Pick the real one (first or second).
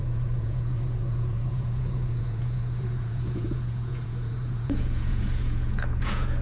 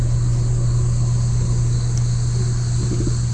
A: second